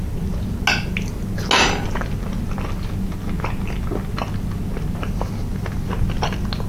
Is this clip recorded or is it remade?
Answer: recorded